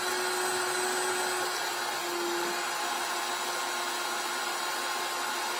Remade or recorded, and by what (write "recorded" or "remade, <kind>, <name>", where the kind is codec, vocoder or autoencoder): recorded